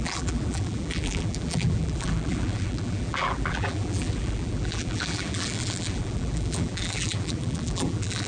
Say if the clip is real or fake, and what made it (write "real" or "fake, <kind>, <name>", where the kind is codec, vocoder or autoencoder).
fake, vocoder, BigVGAN v2